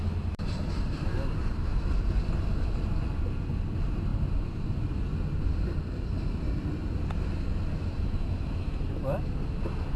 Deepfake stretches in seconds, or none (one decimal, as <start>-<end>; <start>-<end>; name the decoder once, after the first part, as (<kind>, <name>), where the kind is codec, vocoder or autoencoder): none